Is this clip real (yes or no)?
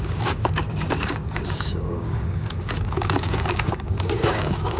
no